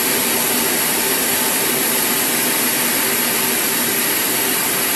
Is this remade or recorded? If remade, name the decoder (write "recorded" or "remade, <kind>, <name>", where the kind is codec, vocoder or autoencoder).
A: recorded